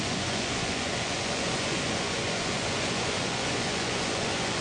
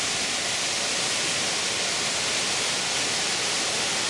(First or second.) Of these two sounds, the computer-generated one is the first